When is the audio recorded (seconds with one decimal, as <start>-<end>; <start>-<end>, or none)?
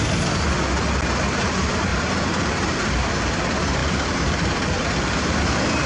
0.0-1.9; 2.9-5.9